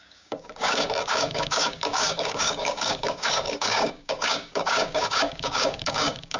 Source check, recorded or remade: remade